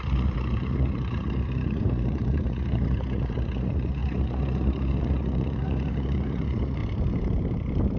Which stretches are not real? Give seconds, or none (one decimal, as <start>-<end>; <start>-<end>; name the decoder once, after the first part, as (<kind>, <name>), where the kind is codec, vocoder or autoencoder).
0.0-6.8 (vocoder, Vocos)